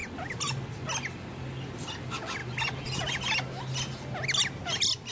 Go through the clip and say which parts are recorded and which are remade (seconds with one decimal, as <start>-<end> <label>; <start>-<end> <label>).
0.0-5.1 recorded